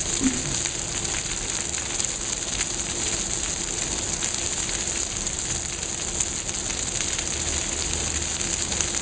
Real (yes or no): yes